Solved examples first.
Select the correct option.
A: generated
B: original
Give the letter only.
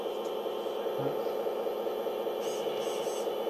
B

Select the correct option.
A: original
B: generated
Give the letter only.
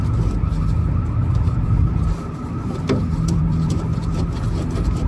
B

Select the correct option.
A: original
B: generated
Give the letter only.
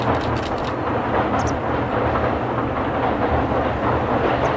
A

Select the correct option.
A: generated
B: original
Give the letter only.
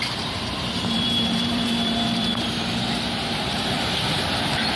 A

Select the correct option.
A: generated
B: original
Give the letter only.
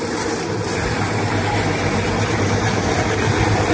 A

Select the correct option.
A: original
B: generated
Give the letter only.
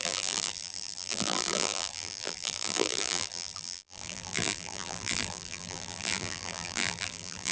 B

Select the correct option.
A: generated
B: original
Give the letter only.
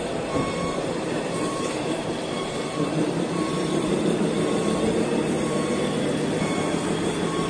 A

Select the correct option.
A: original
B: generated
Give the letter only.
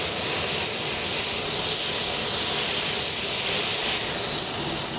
A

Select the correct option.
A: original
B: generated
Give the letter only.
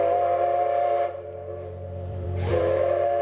B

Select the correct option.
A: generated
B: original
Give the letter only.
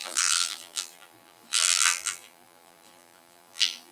A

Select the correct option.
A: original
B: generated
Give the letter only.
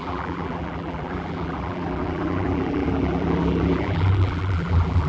B